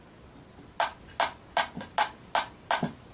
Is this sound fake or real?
real